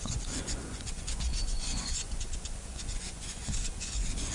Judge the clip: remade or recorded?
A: remade